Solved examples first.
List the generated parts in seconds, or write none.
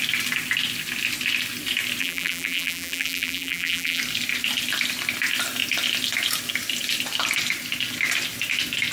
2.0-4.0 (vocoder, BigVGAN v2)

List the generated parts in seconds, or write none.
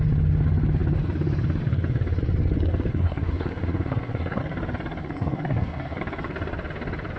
2.9-4.4 (codec, SNAC); 5.0-6.0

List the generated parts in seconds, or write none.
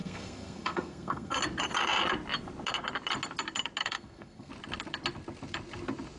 0.0-1.4 (codec, SNAC); 3.8-4.5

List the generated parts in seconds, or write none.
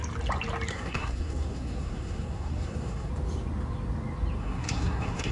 0.7-3.1 (codec, SNAC); 4.4-5.3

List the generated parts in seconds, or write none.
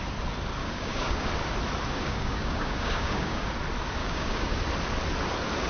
0.6-1.3 (codec, DAC); 2.0-3.5; 4.0-4.5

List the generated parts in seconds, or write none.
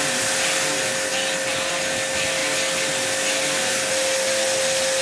none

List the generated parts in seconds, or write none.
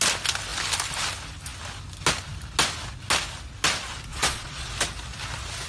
4.1-4.7 (vocoder, Vocos)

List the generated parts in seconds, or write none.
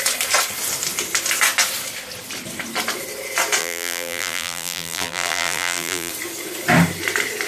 3.6-6.1 (vocoder, BigVGAN v2)